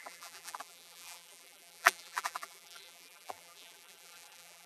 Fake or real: fake